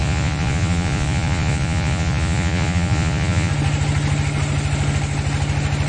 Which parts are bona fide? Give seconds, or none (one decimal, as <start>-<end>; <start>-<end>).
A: 3.5-5.9